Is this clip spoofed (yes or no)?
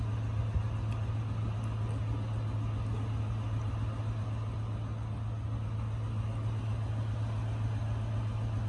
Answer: no